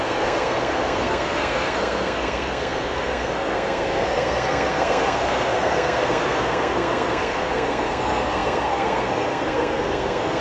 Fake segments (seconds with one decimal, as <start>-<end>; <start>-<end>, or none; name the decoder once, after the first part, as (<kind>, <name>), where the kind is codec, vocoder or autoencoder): 0.0-10.4 (codec, SNAC)